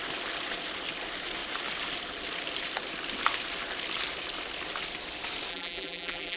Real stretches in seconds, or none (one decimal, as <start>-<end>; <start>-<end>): 0.0-5.5